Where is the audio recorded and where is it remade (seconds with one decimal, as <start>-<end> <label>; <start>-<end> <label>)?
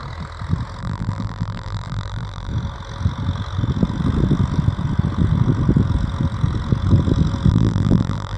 0.0-0.8 recorded; 0.8-2.5 remade; 2.5-7.5 recorded; 7.5-8.4 remade